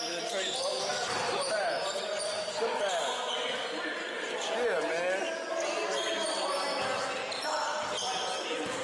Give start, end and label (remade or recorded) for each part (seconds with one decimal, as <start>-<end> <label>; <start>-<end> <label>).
0.0-8.8 recorded